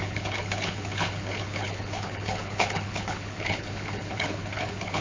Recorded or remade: remade